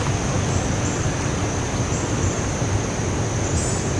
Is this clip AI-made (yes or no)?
no